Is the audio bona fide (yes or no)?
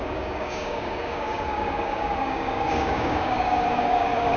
no